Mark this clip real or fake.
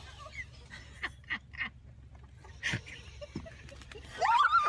real